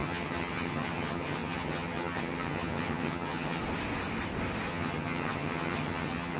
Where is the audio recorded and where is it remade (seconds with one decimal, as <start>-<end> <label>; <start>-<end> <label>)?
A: 0.0-3.6 remade; 3.6-4.7 recorded; 4.7-6.4 remade